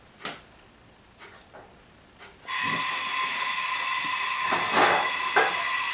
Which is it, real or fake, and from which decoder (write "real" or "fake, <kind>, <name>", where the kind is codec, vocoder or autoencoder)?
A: real